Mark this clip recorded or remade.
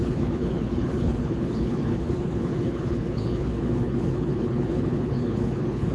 remade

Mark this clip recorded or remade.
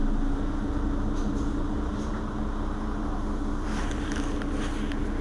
recorded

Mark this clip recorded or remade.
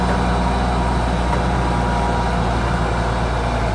recorded